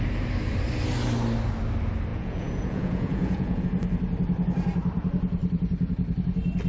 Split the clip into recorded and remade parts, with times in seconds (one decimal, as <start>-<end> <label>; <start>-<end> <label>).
0.0-2.1 recorded; 2.1-3.6 remade; 3.6-6.7 recorded